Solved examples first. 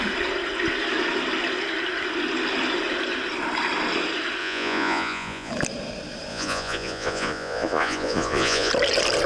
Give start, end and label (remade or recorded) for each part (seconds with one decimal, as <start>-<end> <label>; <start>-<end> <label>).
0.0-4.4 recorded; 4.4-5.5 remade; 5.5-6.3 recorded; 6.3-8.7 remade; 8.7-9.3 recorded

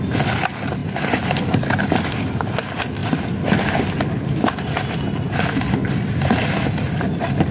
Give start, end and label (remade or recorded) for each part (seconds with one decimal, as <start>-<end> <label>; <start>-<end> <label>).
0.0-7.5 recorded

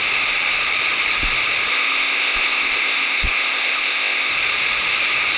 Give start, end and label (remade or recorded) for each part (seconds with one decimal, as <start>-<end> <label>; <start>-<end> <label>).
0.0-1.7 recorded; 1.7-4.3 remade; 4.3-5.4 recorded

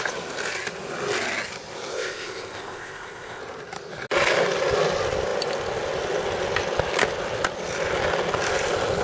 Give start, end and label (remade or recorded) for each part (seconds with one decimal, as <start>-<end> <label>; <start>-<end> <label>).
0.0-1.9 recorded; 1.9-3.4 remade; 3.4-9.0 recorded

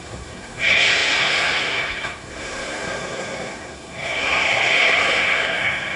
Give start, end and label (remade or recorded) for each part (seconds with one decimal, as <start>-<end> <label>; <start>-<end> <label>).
0.0-6.0 remade

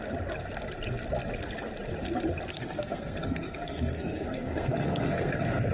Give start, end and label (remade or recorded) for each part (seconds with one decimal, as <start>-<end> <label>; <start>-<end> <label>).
0.0-2.5 recorded; 2.5-5.7 remade